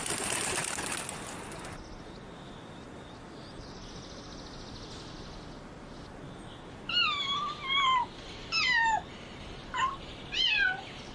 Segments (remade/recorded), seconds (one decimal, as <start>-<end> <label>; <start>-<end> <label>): 0.0-11.1 recorded